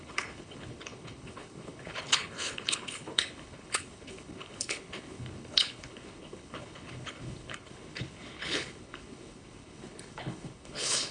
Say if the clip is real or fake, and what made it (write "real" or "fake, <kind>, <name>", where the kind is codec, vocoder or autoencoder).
fake, codec, HILCodec